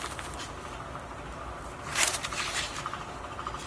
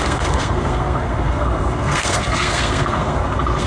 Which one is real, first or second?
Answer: first